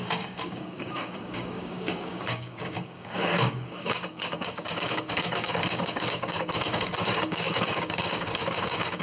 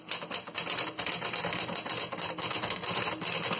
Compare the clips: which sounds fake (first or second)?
first